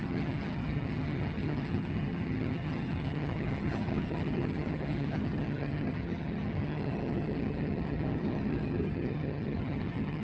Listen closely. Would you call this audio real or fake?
fake